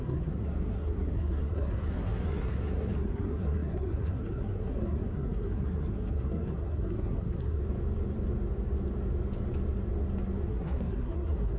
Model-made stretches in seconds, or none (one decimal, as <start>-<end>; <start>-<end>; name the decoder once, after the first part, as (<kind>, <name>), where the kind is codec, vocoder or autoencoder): 0.0-7.6 (codec, SNAC); 10.5-11.6

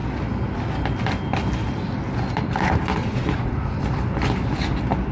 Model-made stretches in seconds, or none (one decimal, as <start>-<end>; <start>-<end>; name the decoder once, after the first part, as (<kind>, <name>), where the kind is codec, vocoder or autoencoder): 3.0-3.8 (vocoder, Vocos)

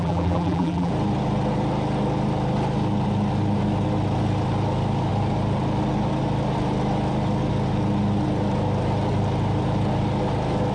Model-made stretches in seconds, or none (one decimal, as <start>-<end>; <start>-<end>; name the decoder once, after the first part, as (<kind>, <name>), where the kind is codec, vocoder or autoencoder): 0.0-0.9 (vocoder, BigVGAN v2)

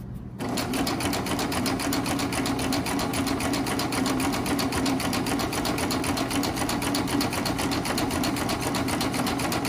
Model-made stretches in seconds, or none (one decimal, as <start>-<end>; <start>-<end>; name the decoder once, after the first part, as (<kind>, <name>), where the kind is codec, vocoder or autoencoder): none

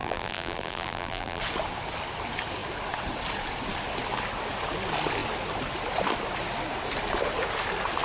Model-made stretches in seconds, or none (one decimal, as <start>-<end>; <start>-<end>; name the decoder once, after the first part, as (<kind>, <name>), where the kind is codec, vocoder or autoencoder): 0.0-1.4 (vocoder, BigVGAN v2)

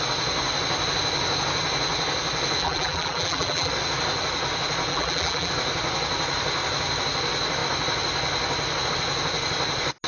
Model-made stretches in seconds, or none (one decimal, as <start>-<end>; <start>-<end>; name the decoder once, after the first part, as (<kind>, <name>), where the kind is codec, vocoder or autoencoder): 2.6-3.7 (vocoder, BigVGAN v2); 4.9-5.5